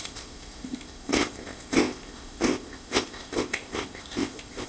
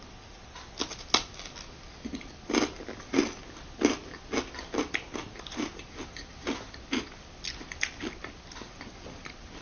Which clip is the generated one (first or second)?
first